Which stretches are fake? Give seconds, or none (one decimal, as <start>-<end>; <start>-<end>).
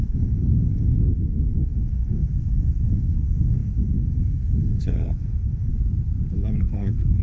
0.0-5.7; 6.6-7.2